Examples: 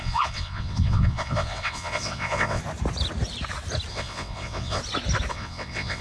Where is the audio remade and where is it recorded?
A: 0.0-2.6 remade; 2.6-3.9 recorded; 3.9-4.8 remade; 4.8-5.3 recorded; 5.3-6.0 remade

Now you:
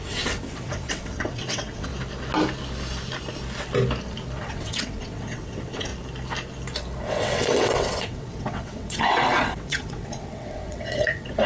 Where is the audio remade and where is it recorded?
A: 0.0-1.9 remade; 1.9-4.4 recorded; 4.4-5.9 remade; 5.9-7.0 recorded; 7.0-11.5 remade

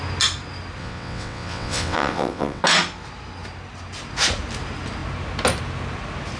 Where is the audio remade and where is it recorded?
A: 0.0-0.8 recorded; 0.8-2.6 remade; 2.6-6.4 recorded

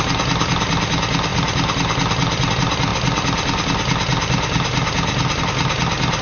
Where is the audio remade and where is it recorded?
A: 0.0-6.2 recorded

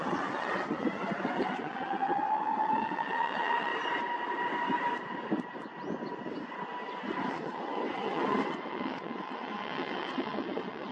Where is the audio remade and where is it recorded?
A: 0.0-3.7 remade; 3.7-7.3 recorded; 7.3-10.9 remade

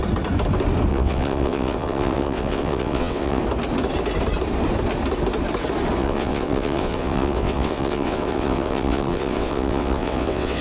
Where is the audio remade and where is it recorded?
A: 0.0-0.9 recorded; 0.9-3.4 remade; 3.4-6.0 recorded; 6.0-10.6 remade